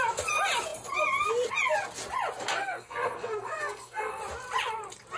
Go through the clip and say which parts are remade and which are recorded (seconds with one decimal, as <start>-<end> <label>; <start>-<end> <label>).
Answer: 0.0-2.5 recorded; 2.5-4.2 remade; 4.2-5.2 recorded

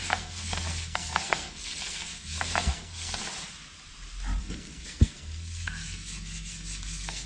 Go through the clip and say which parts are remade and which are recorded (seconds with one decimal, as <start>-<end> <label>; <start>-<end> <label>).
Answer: 0.0-3.2 remade; 3.2-4.4 recorded; 4.4-7.3 remade

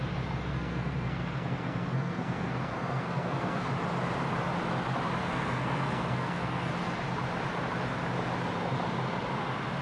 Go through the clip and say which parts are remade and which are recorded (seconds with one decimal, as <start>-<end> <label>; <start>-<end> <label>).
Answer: 0.0-0.5 recorded; 0.5-3.7 remade; 3.7-5.2 recorded; 5.2-6.7 remade; 6.7-9.8 recorded

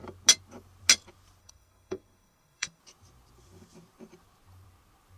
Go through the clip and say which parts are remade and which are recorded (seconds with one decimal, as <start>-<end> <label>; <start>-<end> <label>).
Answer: 0.0-1.4 recorded; 1.4-2.8 remade; 2.8-5.2 recorded

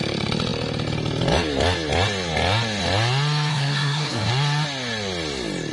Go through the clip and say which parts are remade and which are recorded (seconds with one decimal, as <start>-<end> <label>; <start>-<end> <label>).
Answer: 0.0-3.5 recorded; 3.5-4.3 remade; 4.3-5.7 recorded

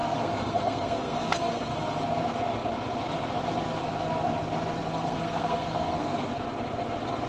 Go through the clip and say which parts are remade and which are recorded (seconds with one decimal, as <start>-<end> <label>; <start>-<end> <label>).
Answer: 0.0-1.8 remade; 1.8-4.9 recorded; 4.9-6.3 remade; 6.3-7.3 recorded

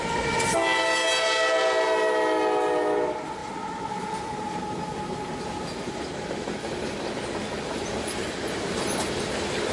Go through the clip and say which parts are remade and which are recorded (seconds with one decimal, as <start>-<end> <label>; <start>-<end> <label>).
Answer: 0.0-9.7 recorded